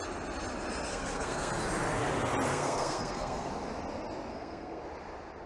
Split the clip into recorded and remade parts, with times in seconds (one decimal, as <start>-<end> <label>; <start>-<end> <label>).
0.0-0.9 recorded; 0.9-1.5 remade; 1.5-2.5 recorded; 2.5-3.5 remade; 3.5-4.3 recorded; 4.3-4.8 remade; 4.8-5.5 recorded